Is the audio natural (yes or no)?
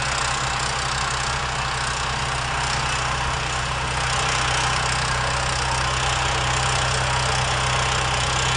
yes